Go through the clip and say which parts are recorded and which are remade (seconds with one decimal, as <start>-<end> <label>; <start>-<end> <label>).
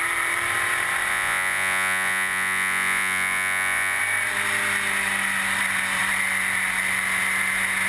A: 0.0-1.1 recorded; 1.1-4.0 remade; 4.0-7.9 recorded